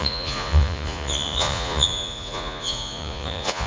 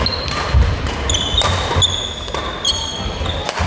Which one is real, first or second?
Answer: second